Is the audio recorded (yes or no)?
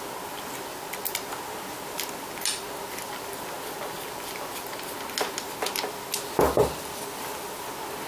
yes